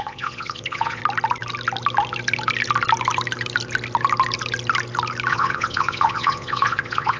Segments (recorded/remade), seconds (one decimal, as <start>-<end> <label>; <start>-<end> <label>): 0.0-1.0 remade; 1.0-5.3 recorded; 5.3-7.2 remade